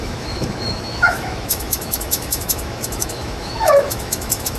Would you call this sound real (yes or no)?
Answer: no